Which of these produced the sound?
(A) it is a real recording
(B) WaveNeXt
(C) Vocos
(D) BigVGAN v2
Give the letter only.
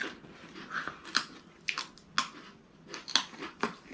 A